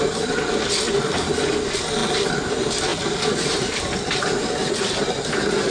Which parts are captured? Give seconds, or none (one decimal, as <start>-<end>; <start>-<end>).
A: 0.0-2.9; 4.7-5.7